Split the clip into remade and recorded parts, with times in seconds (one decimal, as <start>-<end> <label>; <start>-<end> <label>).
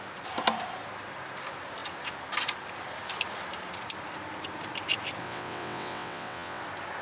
0.0-5.2 recorded; 5.2-6.6 remade; 6.6-7.0 recorded